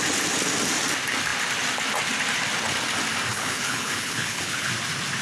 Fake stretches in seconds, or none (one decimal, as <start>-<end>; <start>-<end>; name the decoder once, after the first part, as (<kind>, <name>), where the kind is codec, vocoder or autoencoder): 3.3-4.7 (codec, HILCodec)